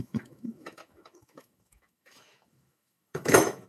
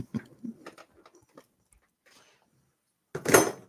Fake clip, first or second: first